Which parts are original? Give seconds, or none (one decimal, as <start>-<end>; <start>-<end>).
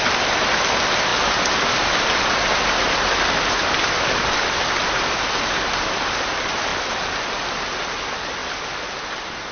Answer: 0.0-9.5